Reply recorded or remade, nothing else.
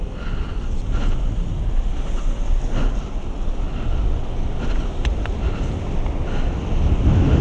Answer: recorded